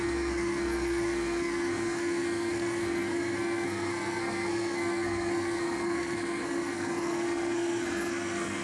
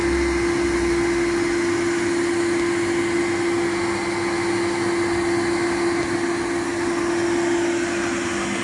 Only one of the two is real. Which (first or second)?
second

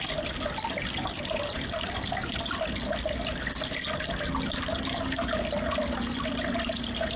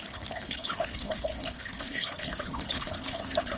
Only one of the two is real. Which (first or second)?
first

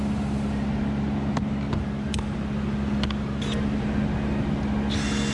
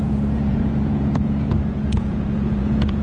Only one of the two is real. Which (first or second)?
first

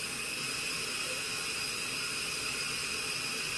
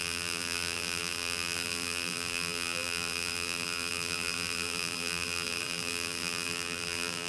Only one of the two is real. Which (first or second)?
first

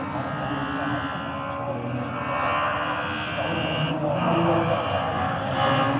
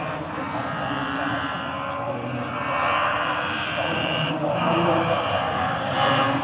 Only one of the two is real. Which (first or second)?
first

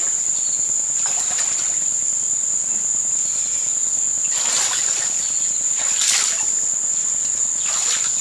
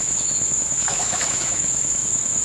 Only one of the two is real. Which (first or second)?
first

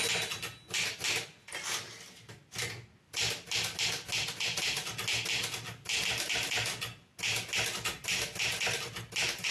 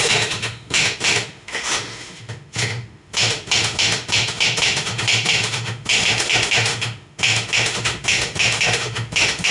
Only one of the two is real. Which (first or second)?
first